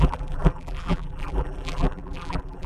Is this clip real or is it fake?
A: fake